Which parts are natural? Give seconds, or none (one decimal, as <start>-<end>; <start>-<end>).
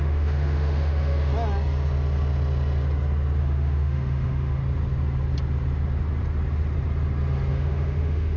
1.3-3.4; 4.6-7.5